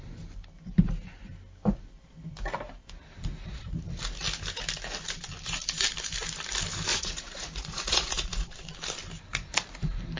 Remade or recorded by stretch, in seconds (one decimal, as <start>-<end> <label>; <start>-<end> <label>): 0.0-3.3 recorded; 3.3-3.8 remade; 3.8-6.9 recorded; 6.9-8.5 remade; 8.5-10.2 recorded